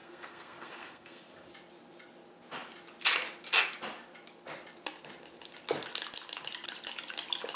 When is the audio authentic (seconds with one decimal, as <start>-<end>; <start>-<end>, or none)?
1.3-7.6